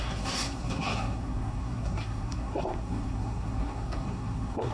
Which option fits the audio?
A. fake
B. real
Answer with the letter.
A